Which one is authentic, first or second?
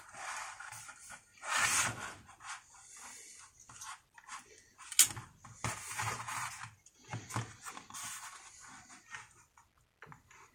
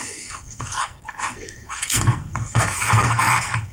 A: first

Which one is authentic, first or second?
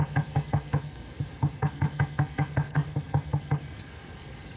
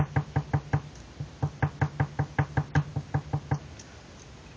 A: second